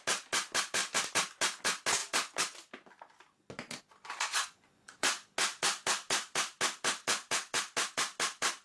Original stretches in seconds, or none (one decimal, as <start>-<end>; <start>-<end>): 0.0-4.3; 5.1-8.6